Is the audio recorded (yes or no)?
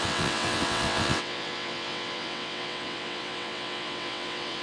no